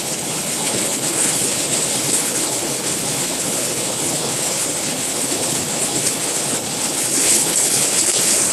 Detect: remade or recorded remade